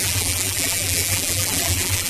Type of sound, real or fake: fake